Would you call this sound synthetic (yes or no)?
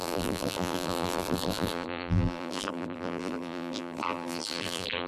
yes